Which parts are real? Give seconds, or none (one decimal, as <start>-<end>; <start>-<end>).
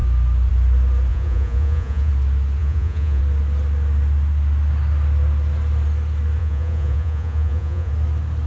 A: 0.0-1.1; 2.1-2.6; 3.2-6.4; 7.9-8.5